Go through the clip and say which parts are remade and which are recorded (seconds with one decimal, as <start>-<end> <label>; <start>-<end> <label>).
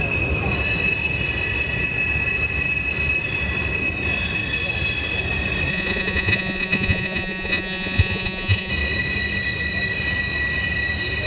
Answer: 0.0-5.7 recorded; 5.7-8.7 remade; 8.7-11.3 recorded